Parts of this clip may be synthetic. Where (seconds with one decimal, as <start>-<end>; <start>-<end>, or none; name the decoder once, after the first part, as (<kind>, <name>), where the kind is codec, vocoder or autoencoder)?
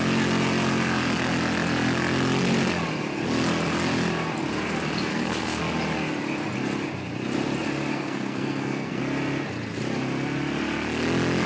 5.1-5.6 (codec, SNAC); 7.9-9.0